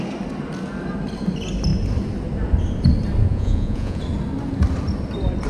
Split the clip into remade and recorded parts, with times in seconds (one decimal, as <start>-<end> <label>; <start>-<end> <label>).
0.0-3.3 recorded; 3.3-4.0 remade; 4.0-5.5 recorded